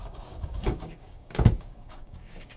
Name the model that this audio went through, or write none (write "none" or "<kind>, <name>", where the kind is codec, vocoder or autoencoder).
codec, DAC